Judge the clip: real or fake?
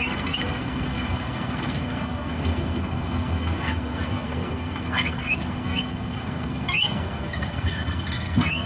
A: fake